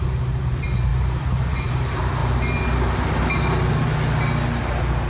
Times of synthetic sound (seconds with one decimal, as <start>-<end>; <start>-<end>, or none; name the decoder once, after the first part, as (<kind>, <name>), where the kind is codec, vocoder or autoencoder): 0.0-2.2 (vocoder, BigVGAN v2)